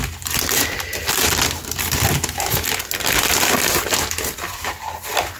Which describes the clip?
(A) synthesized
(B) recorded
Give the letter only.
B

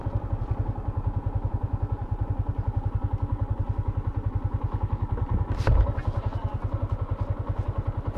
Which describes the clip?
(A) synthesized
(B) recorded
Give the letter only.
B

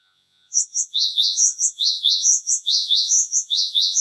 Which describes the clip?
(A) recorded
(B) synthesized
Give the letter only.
B